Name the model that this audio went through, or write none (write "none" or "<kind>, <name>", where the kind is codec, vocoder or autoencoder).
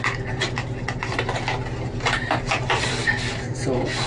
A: none